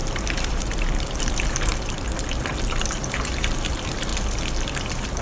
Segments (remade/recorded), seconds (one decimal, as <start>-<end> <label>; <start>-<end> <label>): 0.0-1.7 remade; 1.7-2.5 recorded; 2.5-4.1 remade; 4.1-4.6 recorded; 4.6-5.2 remade